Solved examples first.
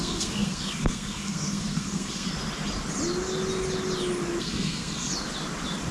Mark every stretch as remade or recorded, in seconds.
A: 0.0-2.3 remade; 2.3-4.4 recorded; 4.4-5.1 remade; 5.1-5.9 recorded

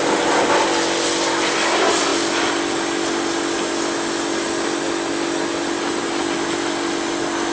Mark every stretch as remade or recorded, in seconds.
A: 0.0-7.5 recorded

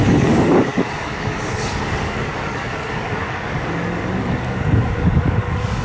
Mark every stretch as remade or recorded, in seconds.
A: 0.0-5.8 remade